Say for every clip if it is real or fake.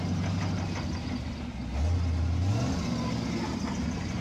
real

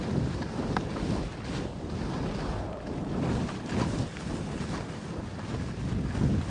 real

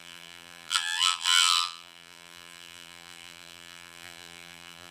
fake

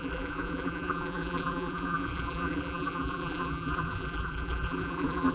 fake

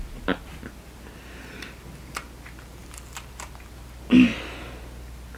real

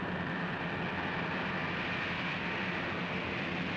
real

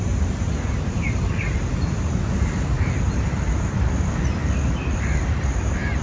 fake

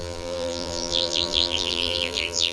fake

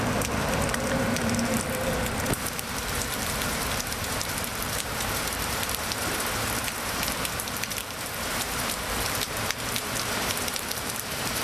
fake